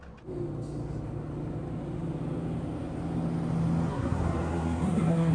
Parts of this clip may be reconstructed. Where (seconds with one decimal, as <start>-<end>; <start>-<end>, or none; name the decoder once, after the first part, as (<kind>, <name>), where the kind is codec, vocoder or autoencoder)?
3.9-5.3 (codec, SNAC)